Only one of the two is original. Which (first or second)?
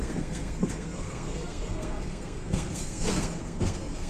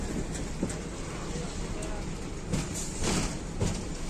second